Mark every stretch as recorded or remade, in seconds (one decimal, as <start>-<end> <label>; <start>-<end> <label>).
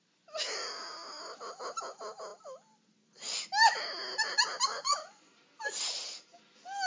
0.0-4.7 recorded; 4.7-5.3 remade; 5.3-6.9 recorded